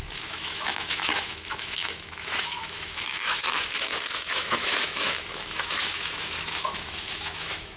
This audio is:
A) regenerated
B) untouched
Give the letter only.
A